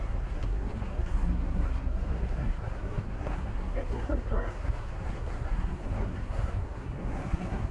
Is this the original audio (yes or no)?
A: no